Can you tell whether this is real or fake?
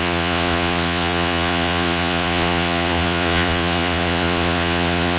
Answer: fake